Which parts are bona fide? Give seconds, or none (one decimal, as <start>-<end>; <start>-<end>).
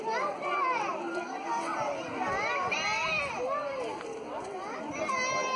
0.0-5.6